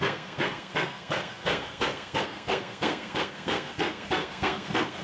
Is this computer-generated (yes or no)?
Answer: yes